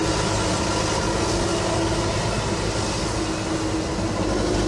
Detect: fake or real real